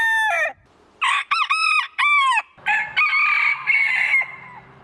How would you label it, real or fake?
real